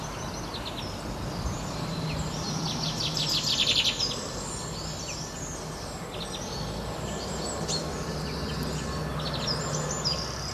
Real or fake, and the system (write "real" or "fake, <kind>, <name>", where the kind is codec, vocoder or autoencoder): real